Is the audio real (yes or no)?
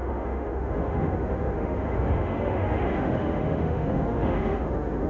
no